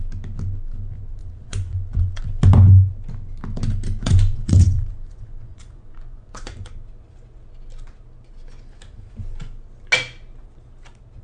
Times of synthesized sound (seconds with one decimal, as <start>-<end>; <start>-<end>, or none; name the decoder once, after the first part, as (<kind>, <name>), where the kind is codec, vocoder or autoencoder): 1.2-2.2 (vocoder, Vocos); 4.0-6.7